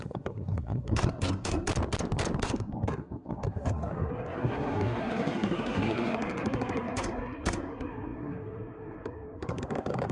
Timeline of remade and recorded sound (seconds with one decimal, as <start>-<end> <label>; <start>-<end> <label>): 0.0-1.7 remade; 1.7-2.4 recorded; 2.4-10.1 remade